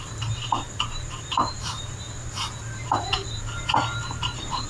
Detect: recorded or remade remade